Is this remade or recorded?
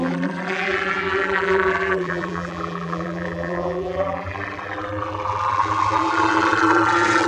remade